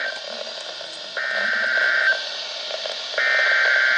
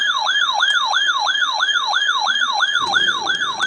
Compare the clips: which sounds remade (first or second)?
second